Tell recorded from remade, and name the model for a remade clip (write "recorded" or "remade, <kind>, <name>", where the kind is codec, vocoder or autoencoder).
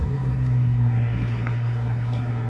remade, codec, SNAC